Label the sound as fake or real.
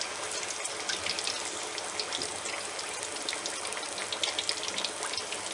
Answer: real